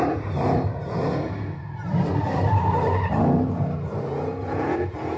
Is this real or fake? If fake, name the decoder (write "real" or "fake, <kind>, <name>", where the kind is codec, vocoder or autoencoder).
real